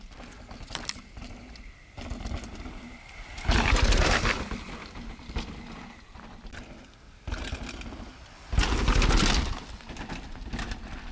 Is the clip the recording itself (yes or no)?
yes